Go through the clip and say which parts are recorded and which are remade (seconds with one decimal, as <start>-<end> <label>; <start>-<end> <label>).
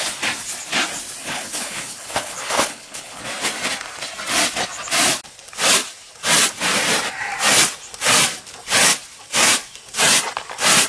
0.0-1.2 recorded; 1.2-3.2 remade; 3.2-10.9 recorded